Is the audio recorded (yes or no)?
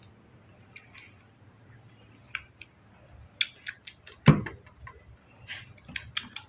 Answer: yes